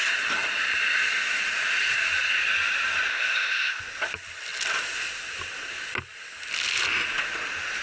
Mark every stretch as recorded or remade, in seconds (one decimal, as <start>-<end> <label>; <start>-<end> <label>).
0.0-3.1 recorded; 3.1-3.8 remade; 3.8-7.8 recorded